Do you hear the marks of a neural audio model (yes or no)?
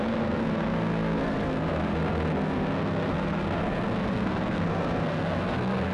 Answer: yes